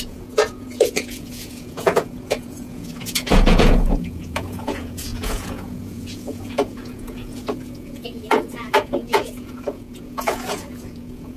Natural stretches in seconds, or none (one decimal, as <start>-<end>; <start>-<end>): none